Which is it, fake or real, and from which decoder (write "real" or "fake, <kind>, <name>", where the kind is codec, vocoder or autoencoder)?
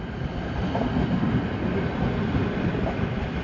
real